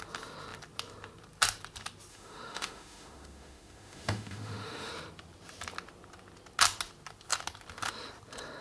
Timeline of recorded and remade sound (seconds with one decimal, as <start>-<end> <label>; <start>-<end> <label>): 0.0-2.1 recorded; 2.1-4.9 remade; 4.9-8.6 recorded

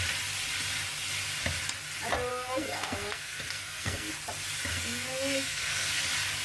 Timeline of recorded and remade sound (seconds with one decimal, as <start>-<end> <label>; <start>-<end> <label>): 0.0-2.3 recorded; 2.3-4.1 remade; 4.1-4.7 recorded; 4.7-6.0 remade; 6.0-6.4 recorded

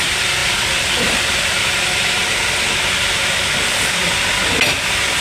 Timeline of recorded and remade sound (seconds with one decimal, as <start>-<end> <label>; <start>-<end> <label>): 0.0-2.2 remade; 2.2-5.2 recorded

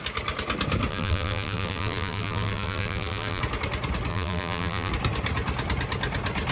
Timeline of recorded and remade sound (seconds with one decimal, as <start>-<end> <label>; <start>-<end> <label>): 0.0-0.9 recorded; 0.9-3.4 remade; 3.4-4.1 recorded; 4.1-4.9 remade; 4.9-6.5 recorded